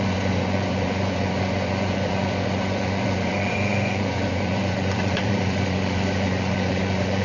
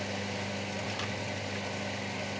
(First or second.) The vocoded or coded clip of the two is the first